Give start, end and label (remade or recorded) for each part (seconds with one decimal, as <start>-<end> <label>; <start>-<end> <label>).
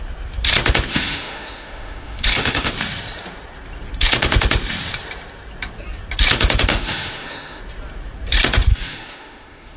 0.0-0.9 recorded; 0.9-2.7 remade; 2.7-6.7 recorded; 6.7-7.6 remade; 7.6-8.7 recorded; 8.7-9.8 remade